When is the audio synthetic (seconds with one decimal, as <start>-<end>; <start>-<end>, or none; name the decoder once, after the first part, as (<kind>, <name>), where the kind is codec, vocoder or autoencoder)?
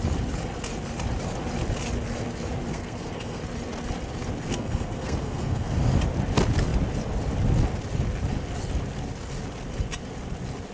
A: 2.7-3.4 (codec, SNAC); 4.5-5.8